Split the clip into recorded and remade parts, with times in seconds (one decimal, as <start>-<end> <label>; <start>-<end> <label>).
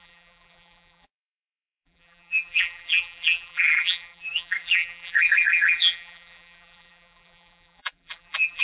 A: 0.0-8.6 remade